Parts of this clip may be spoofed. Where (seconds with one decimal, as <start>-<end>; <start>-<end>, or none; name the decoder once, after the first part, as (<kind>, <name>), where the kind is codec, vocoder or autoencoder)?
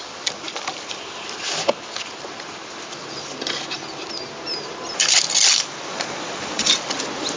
5.9-6.7 (vocoder, Vocos)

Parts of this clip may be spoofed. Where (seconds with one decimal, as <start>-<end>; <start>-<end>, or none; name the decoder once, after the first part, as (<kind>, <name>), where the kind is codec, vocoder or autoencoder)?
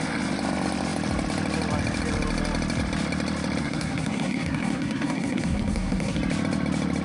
3.6-6.2 (codec, SNAC)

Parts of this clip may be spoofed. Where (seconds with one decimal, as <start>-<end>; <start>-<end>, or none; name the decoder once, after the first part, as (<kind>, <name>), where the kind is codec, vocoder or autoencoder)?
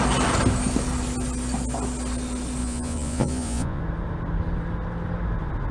2.6-3.8 (vocoder, Vocos)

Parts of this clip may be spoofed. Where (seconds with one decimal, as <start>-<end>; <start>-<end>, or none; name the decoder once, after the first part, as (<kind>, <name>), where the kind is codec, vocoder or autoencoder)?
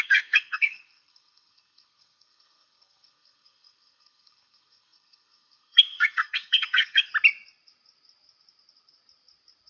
0.0-7.1 (codec, SNAC)